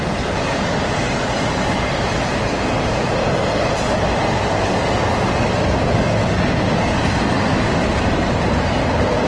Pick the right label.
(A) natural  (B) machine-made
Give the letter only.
A